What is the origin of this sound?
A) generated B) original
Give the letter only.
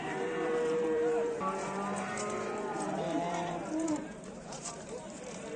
A